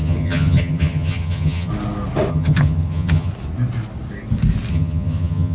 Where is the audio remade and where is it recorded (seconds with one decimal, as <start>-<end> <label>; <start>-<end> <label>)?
0.0-1.7 remade; 1.7-2.3 recorded; 2.3-3.3 remade; 3.3-4.7 recorded; 4.7-5.5 remade